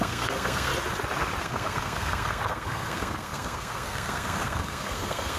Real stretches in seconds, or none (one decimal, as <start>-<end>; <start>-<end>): 0.7-1.4